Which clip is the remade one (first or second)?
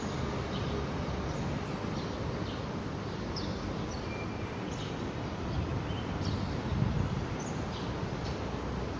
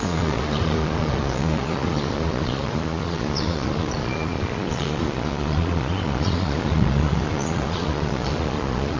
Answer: second